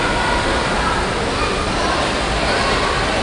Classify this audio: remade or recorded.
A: recorded